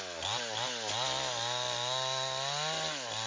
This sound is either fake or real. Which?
real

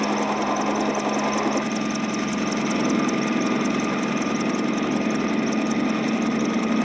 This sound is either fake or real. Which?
real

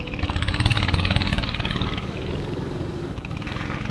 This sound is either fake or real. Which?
fake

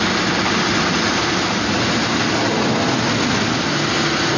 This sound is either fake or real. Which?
real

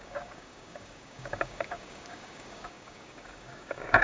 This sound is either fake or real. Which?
fake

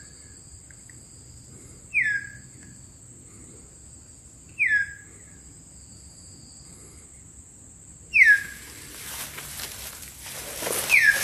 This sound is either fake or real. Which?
real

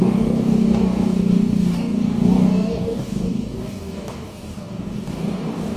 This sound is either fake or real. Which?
fake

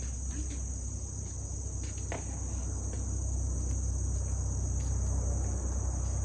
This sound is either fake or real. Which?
real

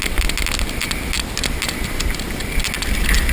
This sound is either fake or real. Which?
real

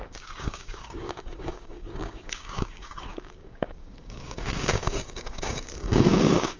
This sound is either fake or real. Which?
fake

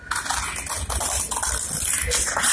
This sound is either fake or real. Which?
real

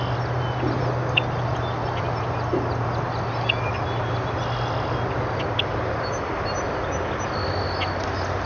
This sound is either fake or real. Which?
real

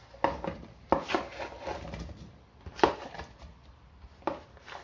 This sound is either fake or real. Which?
real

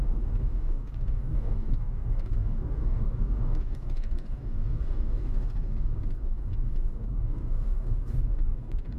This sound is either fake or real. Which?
fake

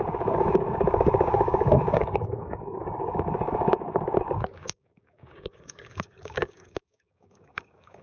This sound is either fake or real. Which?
fake